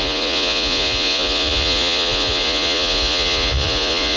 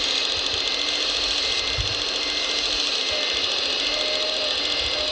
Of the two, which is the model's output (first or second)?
first